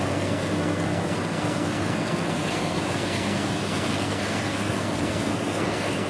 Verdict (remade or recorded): remade